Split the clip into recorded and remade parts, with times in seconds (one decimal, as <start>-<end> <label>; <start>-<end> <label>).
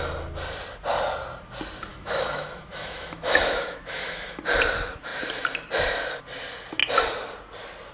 0.0-1.9 recorded; 1.9-4.4 remade; 4.4-7.9 recorded